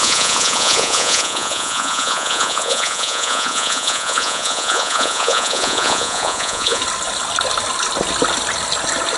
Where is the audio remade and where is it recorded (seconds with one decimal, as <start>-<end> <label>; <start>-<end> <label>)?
0.0-6.8 remade; 6.8-9.2 recorded